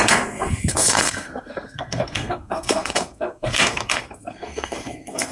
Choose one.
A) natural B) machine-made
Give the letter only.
B